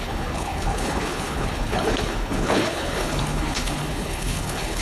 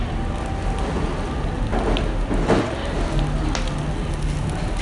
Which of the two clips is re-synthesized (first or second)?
first